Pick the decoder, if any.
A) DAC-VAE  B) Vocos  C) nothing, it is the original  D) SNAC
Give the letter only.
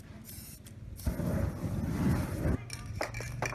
C